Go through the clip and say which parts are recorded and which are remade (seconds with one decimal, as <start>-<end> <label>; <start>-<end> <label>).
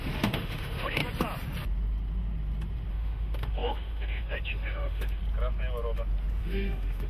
0.0-1.0 remade; 1.0-2.9 recorded; 2.9-5.2 remade; 5.2-6.4 recorded; 6.4-7.1 remade